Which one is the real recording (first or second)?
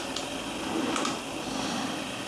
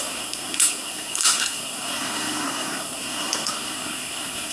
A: first